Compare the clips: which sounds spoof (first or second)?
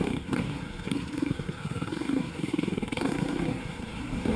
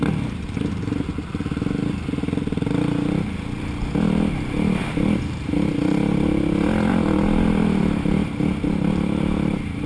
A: first